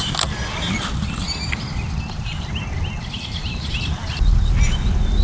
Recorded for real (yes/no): yes